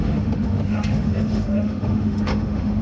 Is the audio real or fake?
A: fake